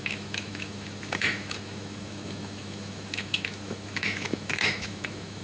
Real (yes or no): no